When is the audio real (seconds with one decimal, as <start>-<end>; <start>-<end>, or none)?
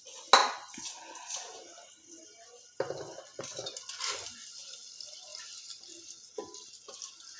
0.0-7.4